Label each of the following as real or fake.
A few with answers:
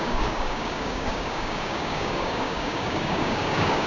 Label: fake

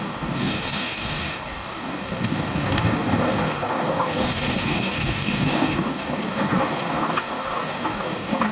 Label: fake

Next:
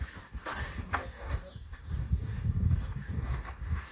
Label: fake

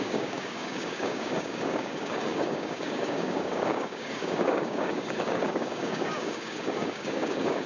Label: fake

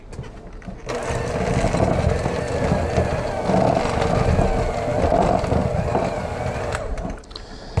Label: real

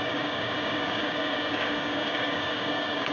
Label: fake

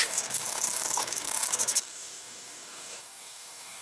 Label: fake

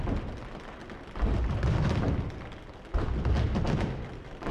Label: real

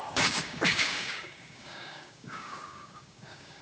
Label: fake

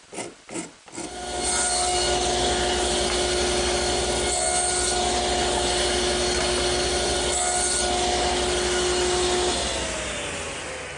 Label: real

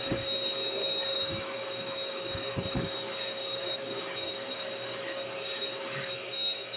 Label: fake